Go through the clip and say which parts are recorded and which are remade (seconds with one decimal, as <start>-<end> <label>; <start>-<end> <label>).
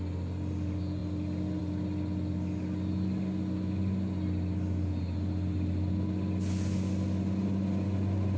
0.0-8.4 recorded